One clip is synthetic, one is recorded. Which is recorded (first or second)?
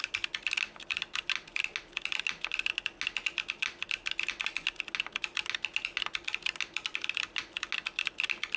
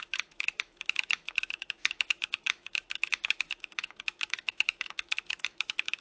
first